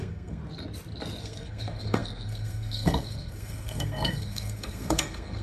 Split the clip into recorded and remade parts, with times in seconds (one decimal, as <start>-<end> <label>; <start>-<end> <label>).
0.0-0.4 remade; 0.4-1.2 recorded; 1.2-5.4 remade

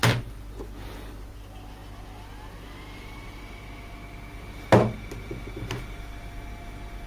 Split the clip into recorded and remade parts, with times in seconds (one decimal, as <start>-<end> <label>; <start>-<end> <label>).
0.0-7.1 recorded

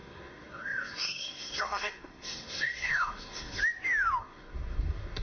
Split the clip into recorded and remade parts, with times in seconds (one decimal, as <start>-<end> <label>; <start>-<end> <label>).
0.0-3.6 remade; 3.6-4.2 recorded; 4.2-5.2 remade